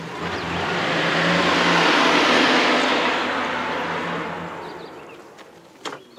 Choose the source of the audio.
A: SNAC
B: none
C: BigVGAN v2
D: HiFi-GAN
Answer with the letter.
B